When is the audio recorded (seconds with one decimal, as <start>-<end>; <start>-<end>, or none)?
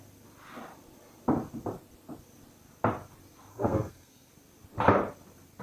0.0-3.5; 4.3-5.6